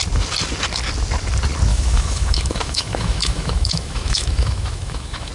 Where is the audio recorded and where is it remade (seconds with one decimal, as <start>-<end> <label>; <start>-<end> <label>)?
0.0-1.7 recorded; 1.7-5.3 remade